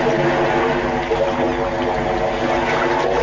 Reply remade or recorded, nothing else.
recorded